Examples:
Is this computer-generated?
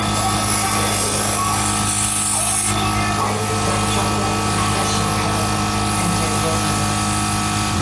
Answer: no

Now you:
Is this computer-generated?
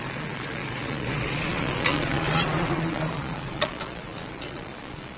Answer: yes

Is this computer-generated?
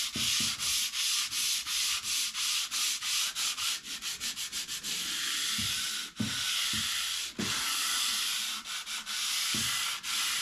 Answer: no